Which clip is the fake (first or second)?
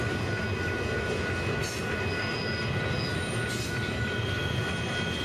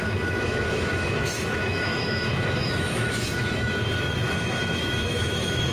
second